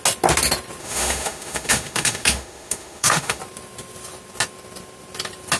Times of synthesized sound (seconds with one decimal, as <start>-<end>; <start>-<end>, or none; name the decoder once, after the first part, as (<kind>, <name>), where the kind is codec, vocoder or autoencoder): 0.8-3.4 (autoencoder, DAC-VAE)